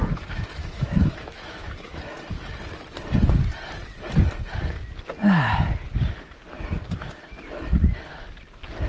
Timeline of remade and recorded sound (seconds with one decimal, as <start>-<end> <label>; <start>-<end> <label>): 0.0-0.6 recorded; 0.6-2.0 remade; 2.0-8.9 recorded